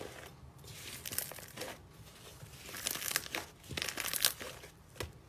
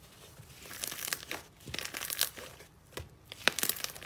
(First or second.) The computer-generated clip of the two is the second